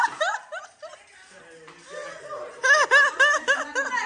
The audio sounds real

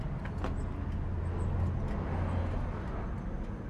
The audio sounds real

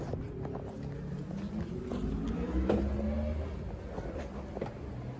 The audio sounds real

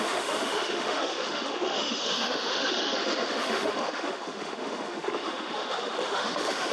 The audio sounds fake